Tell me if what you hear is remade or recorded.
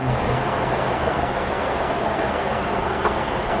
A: remade